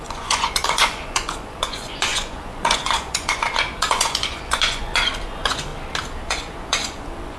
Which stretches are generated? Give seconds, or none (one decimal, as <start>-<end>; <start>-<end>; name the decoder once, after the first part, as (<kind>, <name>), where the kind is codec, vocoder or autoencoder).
0.0-5.7 (vocoder, Vocos); 6.2-7.4